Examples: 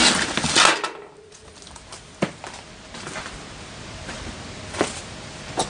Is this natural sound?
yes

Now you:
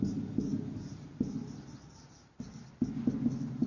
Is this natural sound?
yes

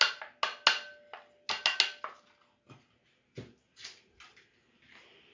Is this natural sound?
yes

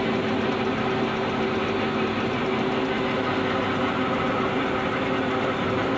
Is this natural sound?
yes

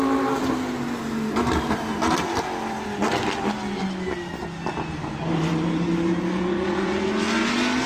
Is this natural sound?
yes